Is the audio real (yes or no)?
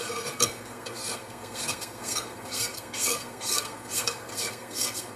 no